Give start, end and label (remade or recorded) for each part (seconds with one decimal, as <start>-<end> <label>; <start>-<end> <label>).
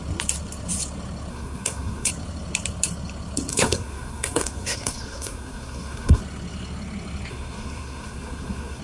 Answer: 0.0-1.3 recorded; 1.3-2.1 remade; 2.1-3.5 recorded; 3.5-6.2 remade; 6.2-7.3 recorded; 7.3-8.8 remade